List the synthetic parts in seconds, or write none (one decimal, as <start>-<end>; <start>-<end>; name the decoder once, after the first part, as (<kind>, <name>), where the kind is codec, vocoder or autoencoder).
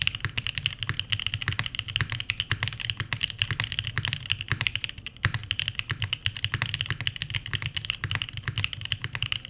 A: none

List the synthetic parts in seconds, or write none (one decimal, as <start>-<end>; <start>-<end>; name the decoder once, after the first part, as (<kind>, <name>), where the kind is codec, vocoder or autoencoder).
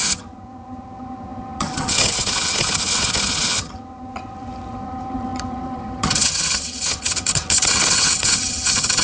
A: 0.0-9.0 (vocoder, HiFi-GAN)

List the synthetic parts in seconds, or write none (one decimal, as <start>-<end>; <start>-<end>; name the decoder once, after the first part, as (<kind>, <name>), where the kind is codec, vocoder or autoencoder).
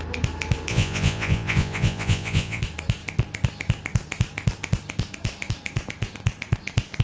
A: 0.7-2.6 (vocoder, Vocos)